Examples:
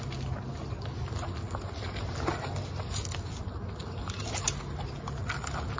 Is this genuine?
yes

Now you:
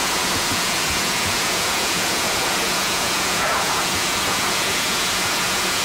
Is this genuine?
no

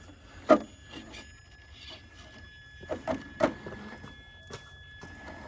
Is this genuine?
yes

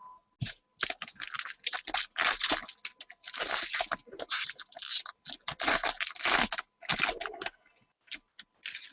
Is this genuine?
yes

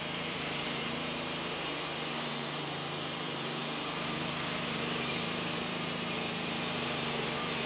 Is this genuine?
no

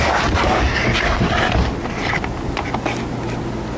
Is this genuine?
yes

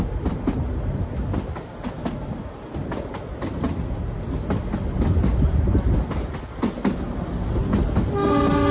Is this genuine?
yes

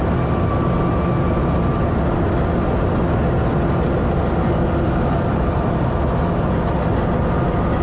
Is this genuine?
yes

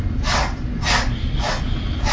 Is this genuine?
yes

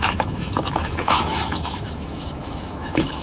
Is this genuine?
no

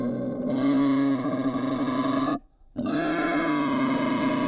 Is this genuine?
yes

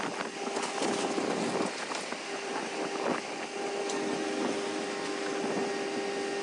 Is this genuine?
yes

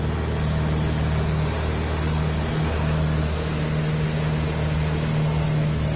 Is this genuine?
yes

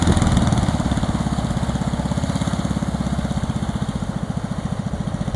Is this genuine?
yes